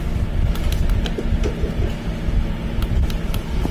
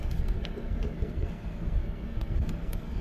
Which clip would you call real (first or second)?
first